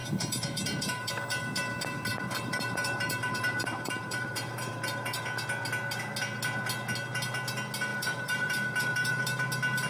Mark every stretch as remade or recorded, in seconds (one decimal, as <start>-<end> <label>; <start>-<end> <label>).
0.0-1.1 remade; 1.1-2.1 recorded; 2.1-5.2 remade; 5.2-7.9 recorded; 7.9-9.2 remade; 9.2-9.9 recorded